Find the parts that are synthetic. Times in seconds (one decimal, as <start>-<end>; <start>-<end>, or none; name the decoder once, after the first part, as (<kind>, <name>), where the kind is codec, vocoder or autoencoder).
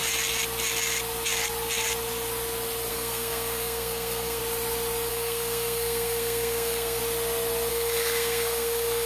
2.9-4.4 (codec, SNAC); 5.1-7.0; 7.7-9.1